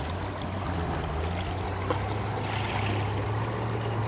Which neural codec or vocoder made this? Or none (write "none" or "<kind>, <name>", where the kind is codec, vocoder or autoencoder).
none